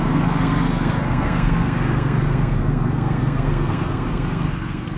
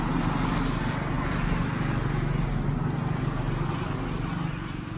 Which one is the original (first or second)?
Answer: second